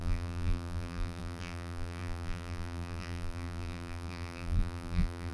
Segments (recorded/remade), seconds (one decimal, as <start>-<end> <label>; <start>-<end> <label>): 0.0-5.3 remade